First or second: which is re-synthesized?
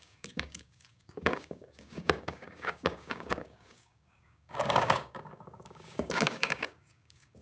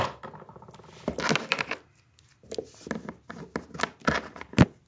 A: first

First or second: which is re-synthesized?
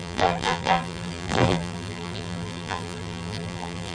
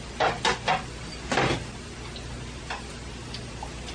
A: first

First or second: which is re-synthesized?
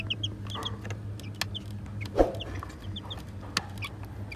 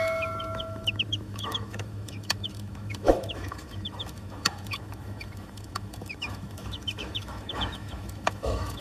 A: second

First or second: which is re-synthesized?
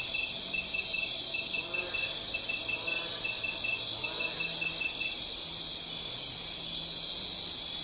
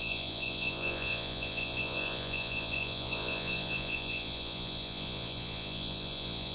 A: second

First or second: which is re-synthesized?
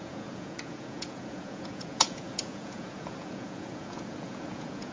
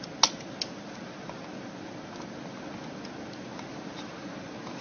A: first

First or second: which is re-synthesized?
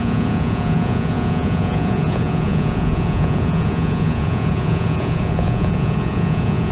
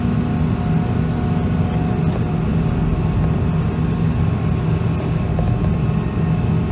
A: first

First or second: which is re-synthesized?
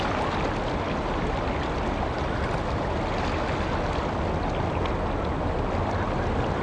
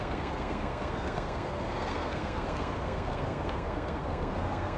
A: second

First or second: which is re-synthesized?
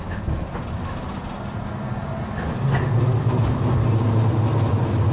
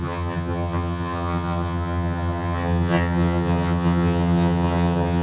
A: second